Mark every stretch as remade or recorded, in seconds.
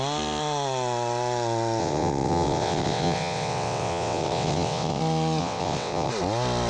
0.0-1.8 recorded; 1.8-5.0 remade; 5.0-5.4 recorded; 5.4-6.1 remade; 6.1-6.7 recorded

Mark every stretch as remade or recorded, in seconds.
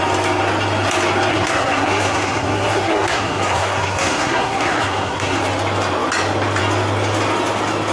0.0-1.3 recorded; 1.3-5.4 remade; 5.4-7.9 recorded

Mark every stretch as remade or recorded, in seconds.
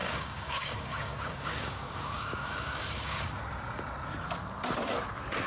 0.0-3.3 remade; 3.3-5.5 recorded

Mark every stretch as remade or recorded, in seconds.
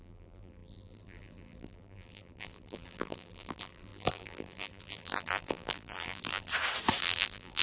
0.0-6.5 remade; 6.5-7.0 recorded; 7.0-7.6 remade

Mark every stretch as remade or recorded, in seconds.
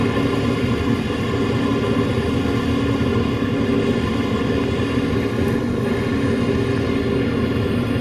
0.0-8.0 recorded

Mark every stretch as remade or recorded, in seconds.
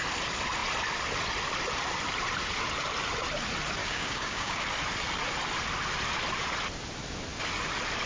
0.0-3.8 recorded; 3.8-4.6 remade; 4.6-8.1 recorded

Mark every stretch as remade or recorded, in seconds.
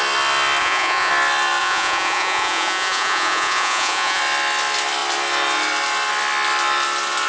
0.0-0.6 recorded; 0.6-1.1 remade; 1.1-1.6 recorded; 1.6-4.2 remade; 4.2-7.3 recorded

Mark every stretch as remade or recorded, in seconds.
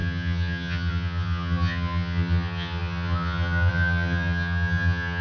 0.0-5.2 remade